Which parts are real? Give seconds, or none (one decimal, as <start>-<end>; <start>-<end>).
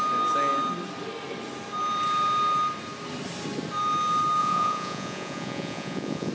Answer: 0.0-4.4